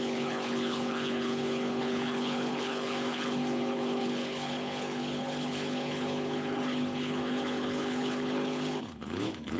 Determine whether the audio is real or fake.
fake